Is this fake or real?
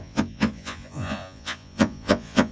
fake